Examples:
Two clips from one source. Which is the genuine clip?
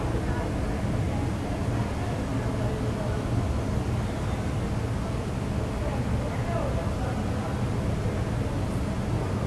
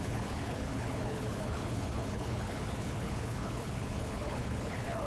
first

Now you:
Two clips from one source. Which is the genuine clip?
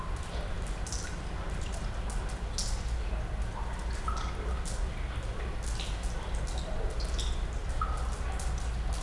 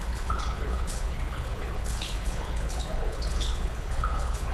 first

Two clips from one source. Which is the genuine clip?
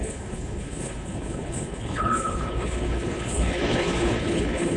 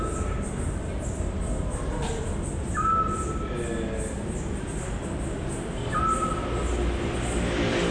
second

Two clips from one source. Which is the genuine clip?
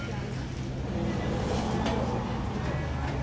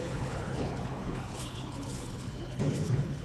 first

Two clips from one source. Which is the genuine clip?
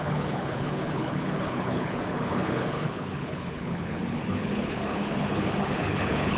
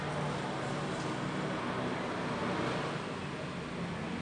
second